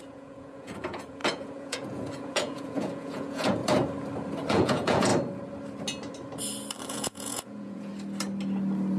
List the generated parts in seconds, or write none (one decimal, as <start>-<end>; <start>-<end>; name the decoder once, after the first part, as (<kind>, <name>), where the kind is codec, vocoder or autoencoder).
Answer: 0.0-3.6 (vocoder, Vocos); 4.5-5.1; 6.9-7.9